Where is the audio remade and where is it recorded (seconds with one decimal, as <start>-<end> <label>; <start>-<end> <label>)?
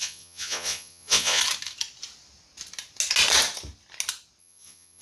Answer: 0.0-1.4 remade; 1.4-4.4 recorded; 4.4-5.0 remade